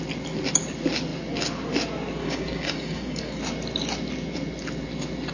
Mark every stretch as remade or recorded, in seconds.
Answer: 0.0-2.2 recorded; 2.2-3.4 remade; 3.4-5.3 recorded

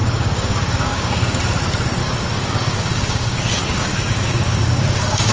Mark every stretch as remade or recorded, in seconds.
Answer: 0.0-1.4 remade; 1.4-2.0 recorded; 2.0-5.3 remade

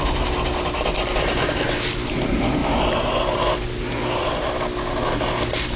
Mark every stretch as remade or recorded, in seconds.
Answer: 0.0-5.8 recorded

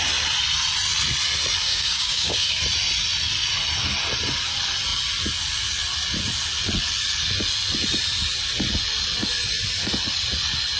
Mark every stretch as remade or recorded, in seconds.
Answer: 0.0-1.6 recorded; 1.6-2.6 remade; 2.6-10.8 recorded

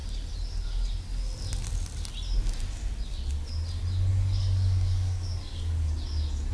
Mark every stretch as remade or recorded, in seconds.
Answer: 0.0-4.1 recorded; 4.1-5.9 remade; 5.9-6.5 recorded

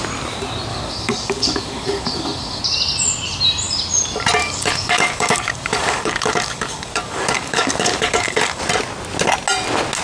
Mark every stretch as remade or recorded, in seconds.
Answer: 0.0-0.7 recorded; 0.7-2.6 remade; 2.6-4.4 recorded; 4.4-8.6 remade; 8.6-10.0 recorded

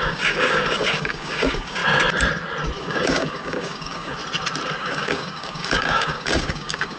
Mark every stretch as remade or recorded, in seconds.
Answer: 0.0-1.8 remade; 1.8-2.8 recorded; 2.8-4.2 remade; 4.2-4.8 recorded; 4.8-7.0 remade